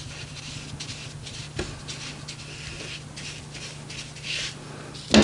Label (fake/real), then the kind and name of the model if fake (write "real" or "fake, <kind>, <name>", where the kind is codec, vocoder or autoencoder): real